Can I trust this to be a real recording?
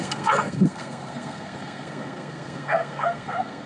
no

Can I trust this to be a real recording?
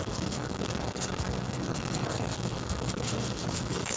no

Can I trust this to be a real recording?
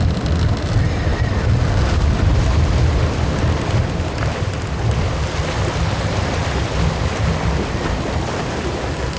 yes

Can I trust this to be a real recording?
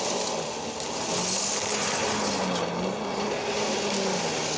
yes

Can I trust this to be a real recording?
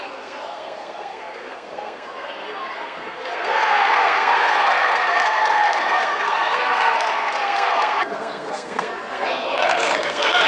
no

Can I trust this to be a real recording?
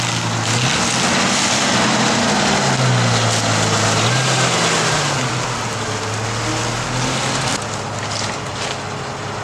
yes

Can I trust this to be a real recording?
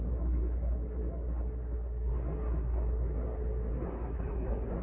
no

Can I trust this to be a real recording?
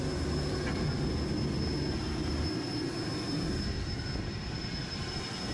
yes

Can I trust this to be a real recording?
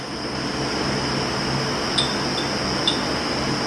yes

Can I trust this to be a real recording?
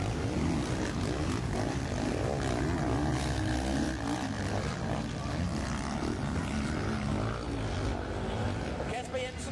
yes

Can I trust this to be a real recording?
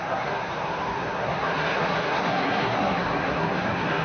no